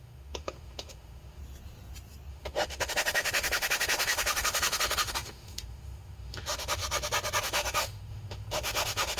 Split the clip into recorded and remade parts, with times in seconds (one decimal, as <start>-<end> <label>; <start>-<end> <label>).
0.0-1.4 remade; 1.4-2.3 recorded; 2.3-6.8 remade; 6.8-7.4 recorded; 7.4-9.2 remade